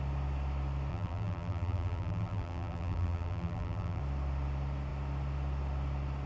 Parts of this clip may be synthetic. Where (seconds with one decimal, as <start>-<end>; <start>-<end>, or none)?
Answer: 0.9-4.0